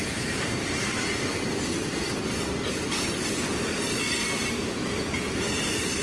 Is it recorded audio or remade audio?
recorded